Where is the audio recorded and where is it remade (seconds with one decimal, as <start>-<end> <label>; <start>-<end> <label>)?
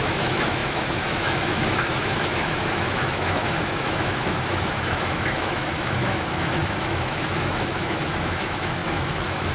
0.0-9.5 remade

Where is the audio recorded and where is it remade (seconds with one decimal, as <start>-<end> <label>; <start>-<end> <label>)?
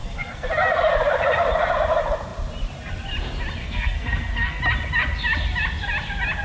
0.0-0.5 remade; 0.5-3.6 recorded; 3.6-4.6 remade; 4.6-6.4 recorded